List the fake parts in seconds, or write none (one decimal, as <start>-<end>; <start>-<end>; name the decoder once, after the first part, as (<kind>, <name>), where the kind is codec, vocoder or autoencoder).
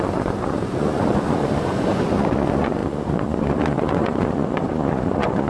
0.0-5.5 (vocoder, Vocos)